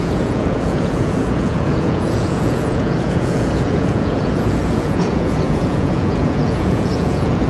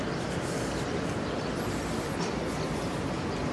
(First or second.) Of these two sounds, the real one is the second